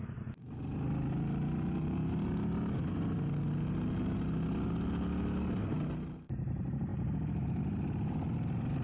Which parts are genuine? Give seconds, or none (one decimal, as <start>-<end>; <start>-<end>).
0.0-8.8